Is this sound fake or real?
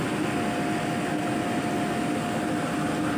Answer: real